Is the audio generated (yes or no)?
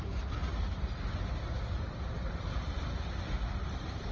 no